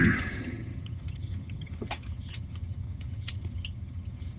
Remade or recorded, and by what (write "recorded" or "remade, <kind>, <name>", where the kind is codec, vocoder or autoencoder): remade, vocoder, HiFi-GAN